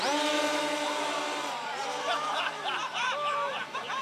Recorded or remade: remade